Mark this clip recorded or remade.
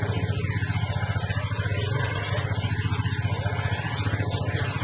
recorded